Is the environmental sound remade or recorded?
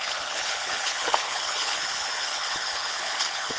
remade